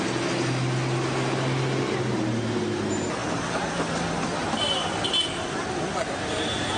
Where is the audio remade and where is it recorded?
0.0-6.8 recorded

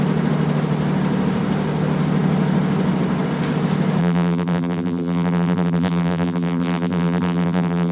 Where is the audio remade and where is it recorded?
0.0-4.0 recorded; 4.0-7.9 remade

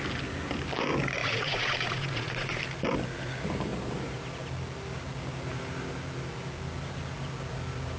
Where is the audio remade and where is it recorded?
0.0-1.2 recorded; 1.2-2.6 remade; 2.6-8.0 recorded

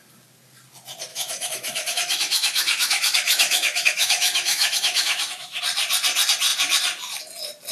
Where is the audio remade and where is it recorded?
0.0-1.1 recorded; 1.1-5.6 remade; 5.6-7.7 recorded